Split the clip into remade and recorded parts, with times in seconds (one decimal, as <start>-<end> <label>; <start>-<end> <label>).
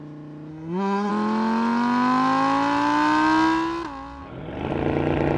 0.0-0.5 recorded; 0.5-1.1 remade; 1.1-5.4 recorded